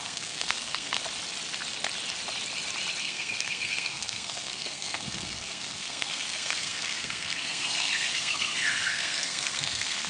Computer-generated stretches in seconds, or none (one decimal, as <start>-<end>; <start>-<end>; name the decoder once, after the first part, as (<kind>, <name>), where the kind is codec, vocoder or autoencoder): 0.0-1.0 (codec, SNAC); 3.0-10.1